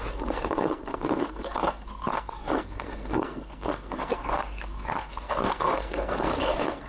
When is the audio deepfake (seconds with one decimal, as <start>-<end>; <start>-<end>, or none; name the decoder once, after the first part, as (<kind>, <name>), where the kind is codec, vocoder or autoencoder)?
0.0-6.9 (codec, SNAC)